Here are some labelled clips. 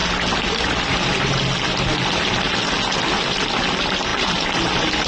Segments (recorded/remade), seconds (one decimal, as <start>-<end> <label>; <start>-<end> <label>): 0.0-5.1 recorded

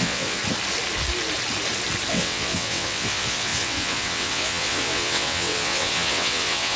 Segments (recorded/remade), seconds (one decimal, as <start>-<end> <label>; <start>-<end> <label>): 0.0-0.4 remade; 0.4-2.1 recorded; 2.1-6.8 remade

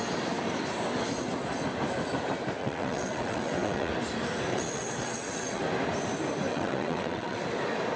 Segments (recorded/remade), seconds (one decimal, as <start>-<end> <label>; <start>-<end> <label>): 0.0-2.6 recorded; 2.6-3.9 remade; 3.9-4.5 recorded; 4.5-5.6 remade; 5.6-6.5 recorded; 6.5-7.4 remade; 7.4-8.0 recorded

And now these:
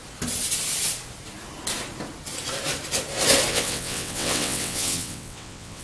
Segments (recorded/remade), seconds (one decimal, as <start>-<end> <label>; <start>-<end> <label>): 0.0-3.5 recorded; 3.5-5.8 remade

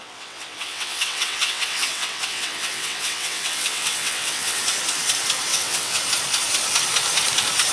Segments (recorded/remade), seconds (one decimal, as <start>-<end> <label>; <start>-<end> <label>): 0.0-4.6 remade; 4.6-5.5 recorded; 5.5-6.0 remade; 6.0-7.7 recorded

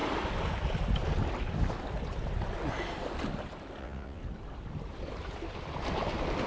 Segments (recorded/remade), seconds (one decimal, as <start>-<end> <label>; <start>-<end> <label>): 0.0-3.8 recorded; 3.8-4.2 remade; 4.2-6.5 recorded

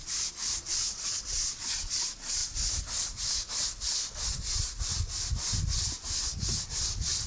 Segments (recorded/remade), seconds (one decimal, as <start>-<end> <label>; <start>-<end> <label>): 0.0-7.3 recorded

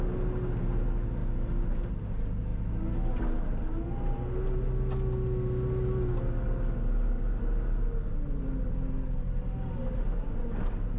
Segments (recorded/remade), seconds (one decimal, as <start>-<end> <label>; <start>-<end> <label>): 0.0-11.0 recorded